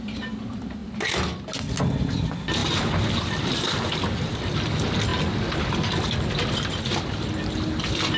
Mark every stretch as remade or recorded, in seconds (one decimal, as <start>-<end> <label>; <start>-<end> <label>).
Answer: 0.0-8.2 recorded